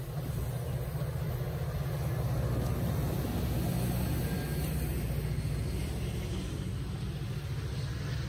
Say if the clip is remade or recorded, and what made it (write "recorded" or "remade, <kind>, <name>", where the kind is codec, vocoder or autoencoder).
recorded